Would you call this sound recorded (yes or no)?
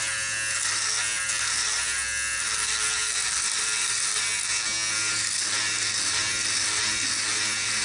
yes